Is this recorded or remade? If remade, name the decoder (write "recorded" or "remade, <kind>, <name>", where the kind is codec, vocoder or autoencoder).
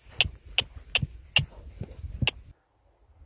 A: recorded